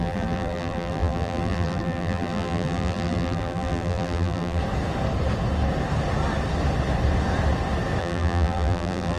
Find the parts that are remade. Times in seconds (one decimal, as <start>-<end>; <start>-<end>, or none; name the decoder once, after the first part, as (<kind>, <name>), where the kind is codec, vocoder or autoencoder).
0.0-4.6 (vocoder, BigVGAN v2); 8.0-9.2